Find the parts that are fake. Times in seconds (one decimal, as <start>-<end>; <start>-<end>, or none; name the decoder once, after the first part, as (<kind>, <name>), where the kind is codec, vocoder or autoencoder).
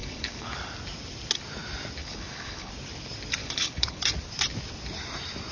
0.0-0.6 (codec, HILCodec); 2.0-2.7; 3.4-4.0